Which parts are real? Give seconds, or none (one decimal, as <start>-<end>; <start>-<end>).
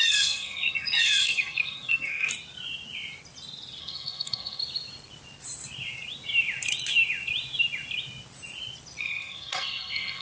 2.3-3.8; 4.6-9.0